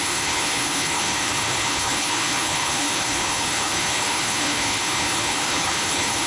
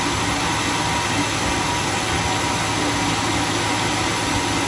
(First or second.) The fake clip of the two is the first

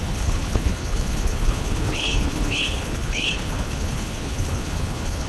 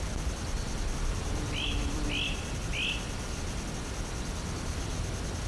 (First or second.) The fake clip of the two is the first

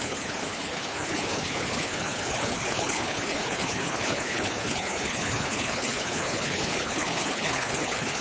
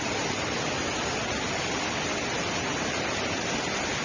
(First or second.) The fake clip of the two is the first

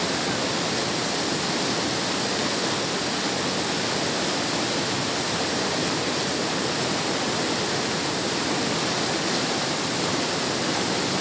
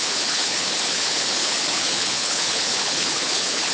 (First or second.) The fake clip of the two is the second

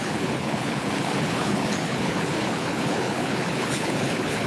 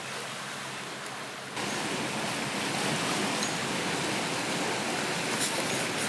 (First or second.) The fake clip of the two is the first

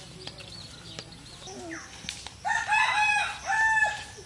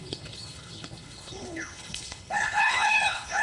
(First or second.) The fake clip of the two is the second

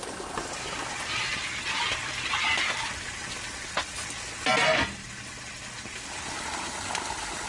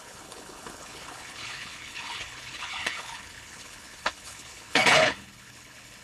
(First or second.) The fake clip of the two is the second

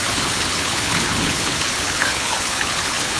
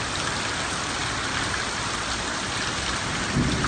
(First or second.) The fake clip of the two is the first